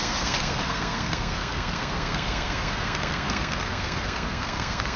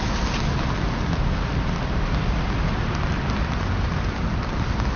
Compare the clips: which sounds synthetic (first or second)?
first